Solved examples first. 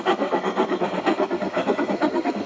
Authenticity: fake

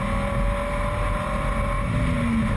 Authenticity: real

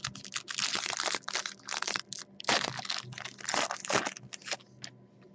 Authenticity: real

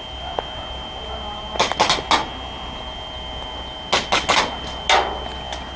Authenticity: real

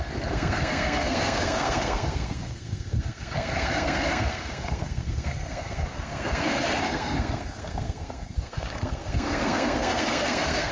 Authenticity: fake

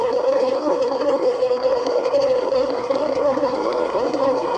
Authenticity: fake